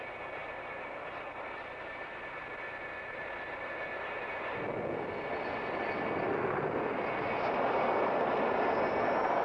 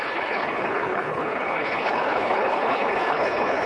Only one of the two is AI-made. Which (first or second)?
second